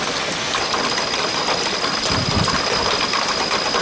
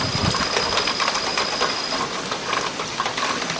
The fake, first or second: second